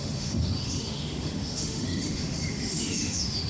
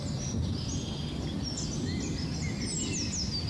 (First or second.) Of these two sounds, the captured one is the second